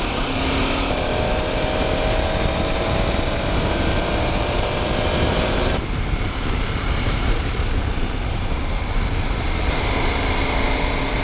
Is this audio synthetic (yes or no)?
yes